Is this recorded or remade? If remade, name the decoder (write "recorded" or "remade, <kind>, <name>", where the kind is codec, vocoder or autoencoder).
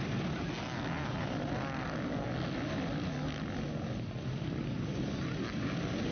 recorded